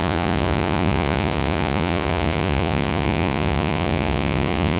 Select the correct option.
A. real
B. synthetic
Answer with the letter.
B